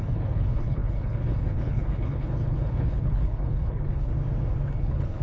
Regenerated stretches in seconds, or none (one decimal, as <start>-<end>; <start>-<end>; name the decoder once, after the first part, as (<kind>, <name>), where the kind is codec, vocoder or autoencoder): 0.0-4.1 (codec, HILCodec); 4.8-5.2